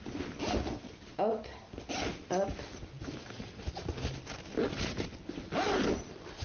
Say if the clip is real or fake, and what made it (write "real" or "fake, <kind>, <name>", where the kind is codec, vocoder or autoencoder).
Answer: real